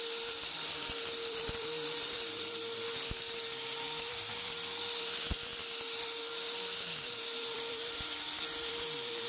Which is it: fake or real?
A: fake